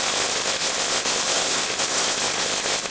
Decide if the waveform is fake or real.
fake